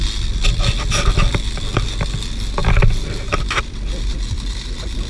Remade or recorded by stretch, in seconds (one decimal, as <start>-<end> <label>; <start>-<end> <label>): 0.0-5.1 recorded